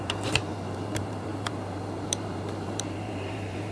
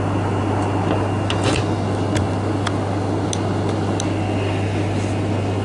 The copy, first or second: first